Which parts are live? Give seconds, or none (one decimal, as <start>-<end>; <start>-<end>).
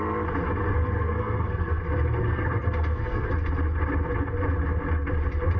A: 0.0-0.7; 1.8-2.2; 3.3-5.6